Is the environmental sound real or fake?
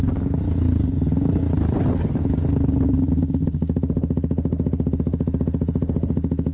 real